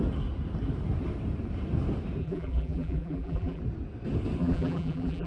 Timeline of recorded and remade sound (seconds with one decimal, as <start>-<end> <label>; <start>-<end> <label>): 0.0-2.2 recorded; 2.2-3.6 remade; 3.6-4.4 recorded; 4.4-5.3 remade